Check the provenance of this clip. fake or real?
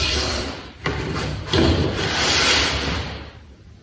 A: fake